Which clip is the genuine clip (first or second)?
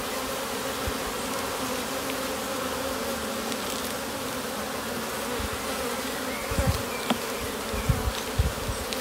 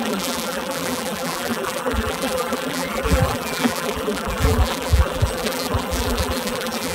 first